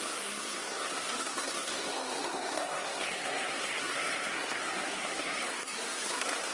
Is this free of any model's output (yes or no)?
no